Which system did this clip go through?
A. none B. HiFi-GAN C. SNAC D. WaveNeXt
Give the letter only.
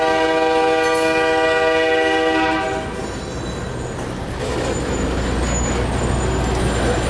A